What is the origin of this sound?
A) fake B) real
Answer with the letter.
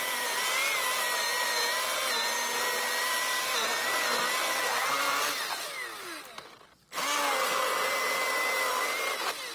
B